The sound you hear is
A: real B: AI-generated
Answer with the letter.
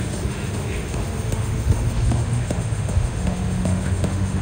B